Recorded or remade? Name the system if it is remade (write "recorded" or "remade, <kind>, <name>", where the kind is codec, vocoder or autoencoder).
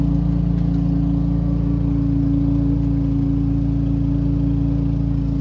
recorded